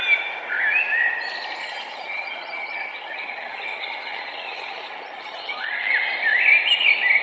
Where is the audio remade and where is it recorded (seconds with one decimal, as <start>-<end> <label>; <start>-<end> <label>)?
0.0-1.6 recorded; 1.6-5.9 remade; 5.9-7.2 recorded